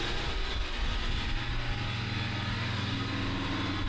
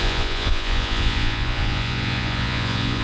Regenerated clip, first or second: second